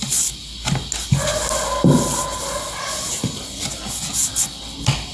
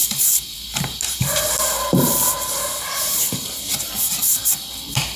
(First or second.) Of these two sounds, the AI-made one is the second